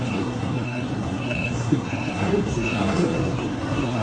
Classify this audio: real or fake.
fake